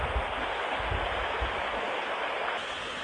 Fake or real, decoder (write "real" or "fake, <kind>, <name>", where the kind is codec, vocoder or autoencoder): real